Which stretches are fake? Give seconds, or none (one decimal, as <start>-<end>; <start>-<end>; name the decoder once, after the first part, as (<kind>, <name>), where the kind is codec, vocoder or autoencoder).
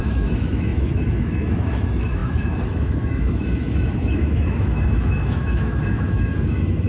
0.0-6.9 (autoencoder, DAC-VAE)